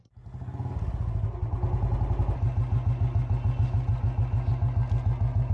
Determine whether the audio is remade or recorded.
recorded